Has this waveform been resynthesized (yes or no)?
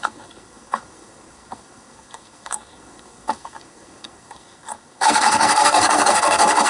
yes